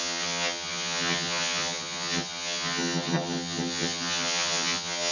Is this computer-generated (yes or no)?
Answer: yes